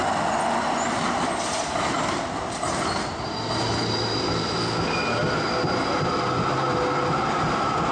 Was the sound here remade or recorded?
recorded